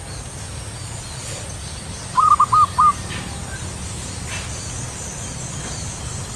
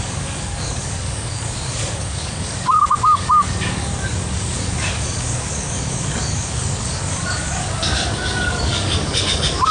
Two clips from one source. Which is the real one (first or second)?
first